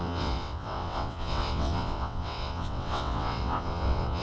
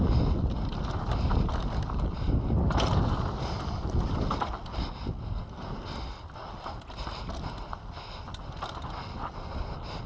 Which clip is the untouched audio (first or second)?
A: second